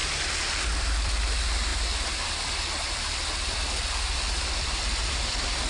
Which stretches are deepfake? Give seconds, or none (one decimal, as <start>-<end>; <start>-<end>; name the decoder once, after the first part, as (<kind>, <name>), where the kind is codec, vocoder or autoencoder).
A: 0.8-5.7 (vocoder, BigVGAN v2)